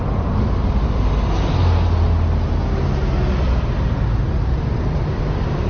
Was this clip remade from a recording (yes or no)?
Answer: no